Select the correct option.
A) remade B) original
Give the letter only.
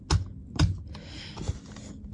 B